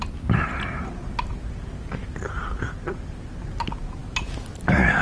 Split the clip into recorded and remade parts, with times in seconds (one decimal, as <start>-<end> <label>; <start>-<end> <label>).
0.0-5.0 recorded